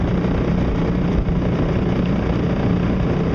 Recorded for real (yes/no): yes